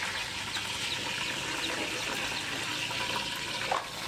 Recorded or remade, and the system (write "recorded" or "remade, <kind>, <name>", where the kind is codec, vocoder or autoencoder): recorded